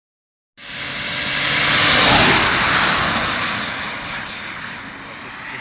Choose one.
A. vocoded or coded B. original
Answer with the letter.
B